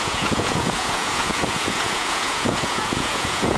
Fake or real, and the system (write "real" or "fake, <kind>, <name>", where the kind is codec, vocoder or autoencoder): fake, vocoder, Vocos